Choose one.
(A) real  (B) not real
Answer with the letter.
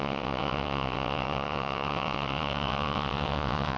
B